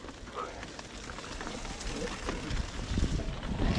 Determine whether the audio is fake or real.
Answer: real